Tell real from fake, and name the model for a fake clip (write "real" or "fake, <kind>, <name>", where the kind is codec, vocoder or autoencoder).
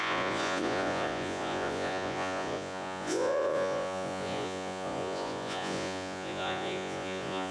fake, vocoder, Vocos